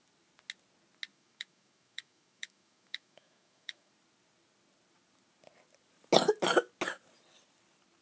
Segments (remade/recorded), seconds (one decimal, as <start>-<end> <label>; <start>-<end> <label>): 0.0-1.1 recorded; 1.1-3.9 remade; 3.9-8.0 recorded